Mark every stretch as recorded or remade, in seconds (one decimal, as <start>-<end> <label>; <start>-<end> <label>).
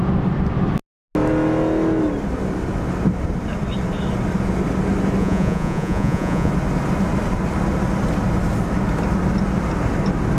0.0-5.2 recorded; 5.2-6.5 remade; 6.5-10.4 recorded